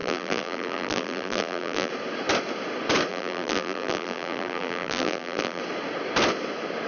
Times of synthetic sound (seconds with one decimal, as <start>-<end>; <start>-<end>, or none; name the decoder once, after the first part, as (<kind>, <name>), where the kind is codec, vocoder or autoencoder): 0.0-1.9 (vocoder, BigVGAN v2); 3.1-5.6